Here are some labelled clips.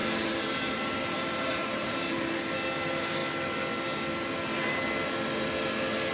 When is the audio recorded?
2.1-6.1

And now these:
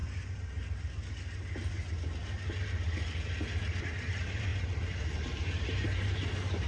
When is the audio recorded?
0.0-3.8

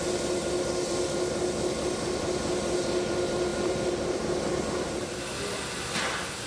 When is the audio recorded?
0.0-3.5; 5.2-6.5

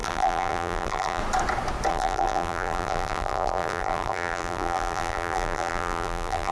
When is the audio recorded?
1.2-1.9

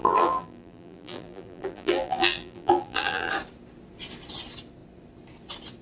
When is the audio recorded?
3.3-5.8

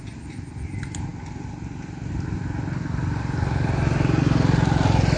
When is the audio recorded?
0.0-5.2

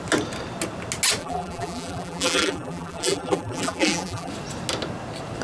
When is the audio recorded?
0.0-1.2; 4.3-5.4